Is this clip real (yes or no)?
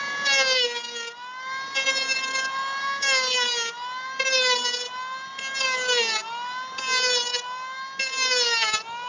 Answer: yes